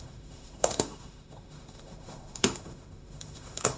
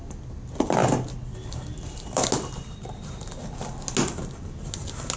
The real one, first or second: second